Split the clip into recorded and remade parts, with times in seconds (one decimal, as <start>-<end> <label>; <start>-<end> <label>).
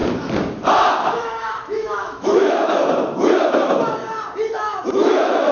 0.0-1.1 recorded; 1.1-2.8 remade; 2.8-4.5 recorded; 4.5-5.5 remade